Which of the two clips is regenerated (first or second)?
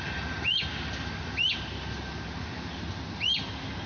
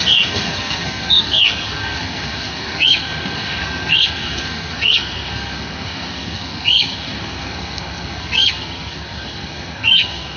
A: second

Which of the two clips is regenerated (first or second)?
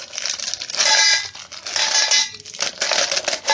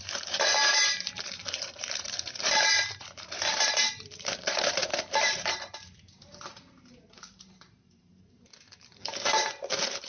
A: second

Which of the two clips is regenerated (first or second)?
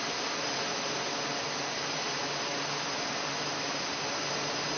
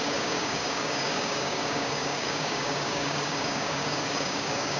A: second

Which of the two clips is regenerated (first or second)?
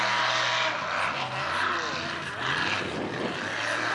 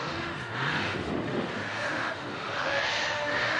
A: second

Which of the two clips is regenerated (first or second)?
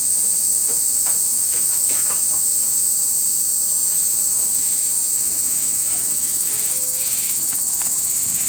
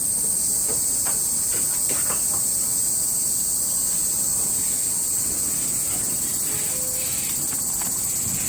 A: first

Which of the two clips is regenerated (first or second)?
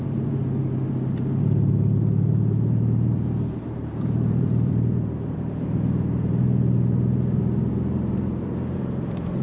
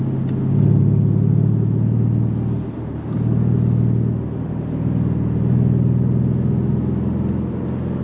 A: first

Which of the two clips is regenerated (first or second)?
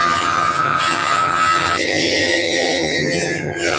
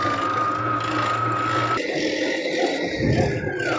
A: first